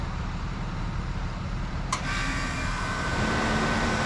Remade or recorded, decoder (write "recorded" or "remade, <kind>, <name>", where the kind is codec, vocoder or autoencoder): remade, vocoder, BigVGAN v2